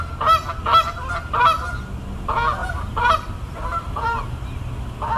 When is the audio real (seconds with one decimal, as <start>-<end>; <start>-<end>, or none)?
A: 0.0-2.6; 4.6-5.2